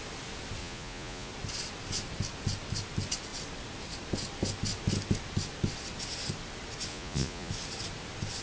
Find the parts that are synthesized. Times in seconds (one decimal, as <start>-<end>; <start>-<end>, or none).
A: 0.6-1.3; 6.9-7.5